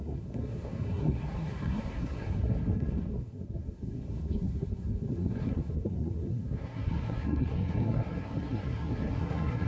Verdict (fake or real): fake